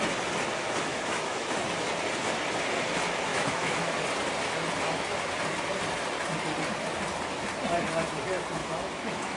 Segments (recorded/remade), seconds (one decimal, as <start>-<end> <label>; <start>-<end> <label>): 0.0-0.9 recorded; 0.9-1.7 remade; 1.7-3.3 recorded; 3.3-3.9 remade; 3.9-8.6 recorded; 8.6-9.4 remade